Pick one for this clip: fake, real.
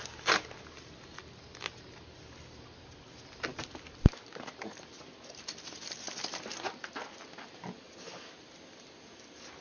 real